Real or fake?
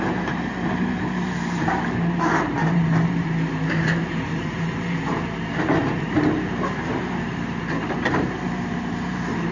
fake